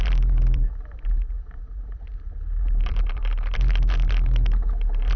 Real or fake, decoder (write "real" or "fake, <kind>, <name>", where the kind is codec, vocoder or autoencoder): fake, vocoder, BigVGAN v2